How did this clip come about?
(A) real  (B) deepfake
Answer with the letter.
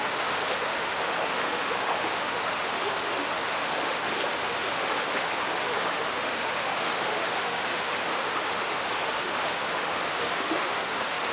B